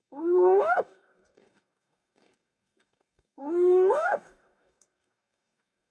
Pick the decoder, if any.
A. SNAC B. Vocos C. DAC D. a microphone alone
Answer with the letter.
C